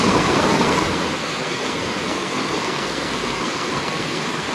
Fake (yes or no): yes